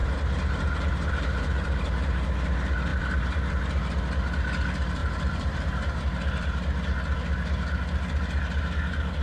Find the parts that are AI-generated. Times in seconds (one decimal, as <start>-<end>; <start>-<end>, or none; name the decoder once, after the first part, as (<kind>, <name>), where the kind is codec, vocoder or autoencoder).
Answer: 0.0-1.9 (vocoder, BigVGAN v2); 2.9-3.5; 5.0-6.0